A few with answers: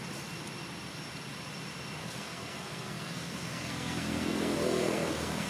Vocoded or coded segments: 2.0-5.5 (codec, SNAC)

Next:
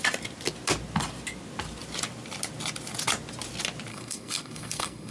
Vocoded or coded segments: 3.9-5.1 (codec, SNAC)

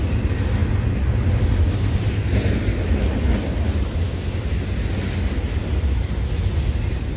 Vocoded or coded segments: none

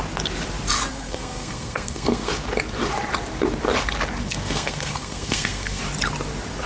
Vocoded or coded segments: 0.9-2.3 (codec, SNAC); 4.2-5.8

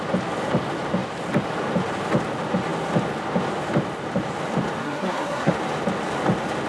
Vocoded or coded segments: 4.8-5.5 (codec, SNAC)

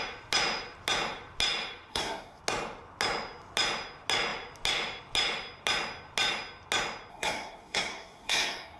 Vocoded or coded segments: 1.9-2.4 (codec, SNAC); 7.1-8.8

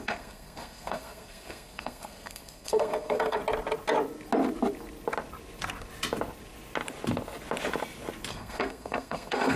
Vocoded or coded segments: 0.0-3.4 (codec, SNAC); 8.3-9.6